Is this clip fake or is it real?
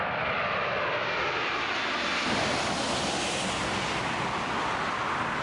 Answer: real